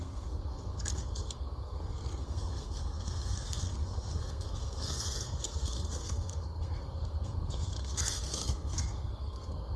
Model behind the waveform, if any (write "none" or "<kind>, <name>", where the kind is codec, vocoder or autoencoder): codec, SNAC